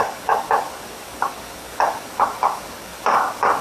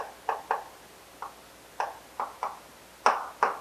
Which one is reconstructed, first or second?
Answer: first